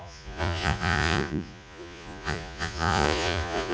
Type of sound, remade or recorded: remade